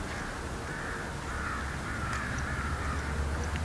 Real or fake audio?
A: real